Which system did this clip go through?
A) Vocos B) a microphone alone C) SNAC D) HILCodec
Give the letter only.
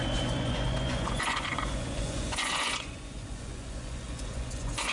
A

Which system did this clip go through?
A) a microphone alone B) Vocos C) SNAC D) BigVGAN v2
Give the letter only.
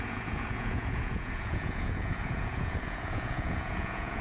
B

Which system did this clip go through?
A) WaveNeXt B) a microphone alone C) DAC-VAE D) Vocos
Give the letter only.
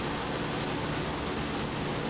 B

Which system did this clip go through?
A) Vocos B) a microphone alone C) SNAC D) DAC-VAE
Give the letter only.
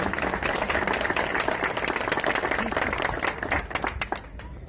B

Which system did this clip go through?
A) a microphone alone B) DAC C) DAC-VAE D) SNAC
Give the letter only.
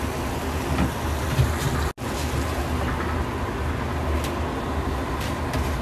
A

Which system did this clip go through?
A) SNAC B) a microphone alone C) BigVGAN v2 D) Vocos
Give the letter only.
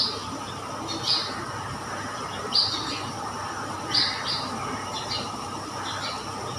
B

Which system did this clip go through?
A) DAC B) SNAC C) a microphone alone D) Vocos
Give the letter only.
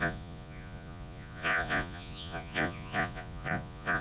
D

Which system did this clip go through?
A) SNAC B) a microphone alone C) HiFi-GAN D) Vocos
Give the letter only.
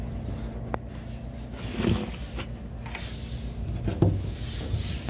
B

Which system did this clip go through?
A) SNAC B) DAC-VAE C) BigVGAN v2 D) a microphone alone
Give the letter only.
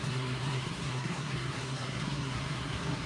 A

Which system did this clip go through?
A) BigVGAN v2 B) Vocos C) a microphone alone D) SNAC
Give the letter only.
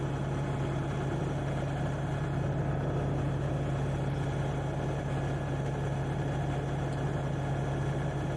C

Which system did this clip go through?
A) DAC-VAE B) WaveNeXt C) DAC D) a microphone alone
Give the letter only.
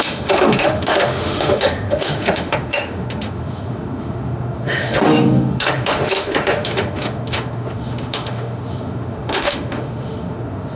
A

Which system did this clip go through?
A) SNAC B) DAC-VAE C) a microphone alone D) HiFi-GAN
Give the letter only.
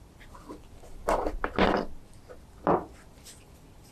C